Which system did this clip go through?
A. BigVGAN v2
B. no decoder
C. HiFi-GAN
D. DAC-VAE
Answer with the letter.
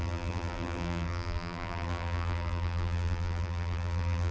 A